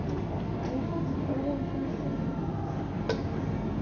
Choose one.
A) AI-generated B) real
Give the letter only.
B